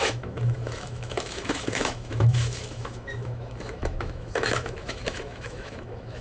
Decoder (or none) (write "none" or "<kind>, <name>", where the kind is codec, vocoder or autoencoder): autoencoder, DAC-VAE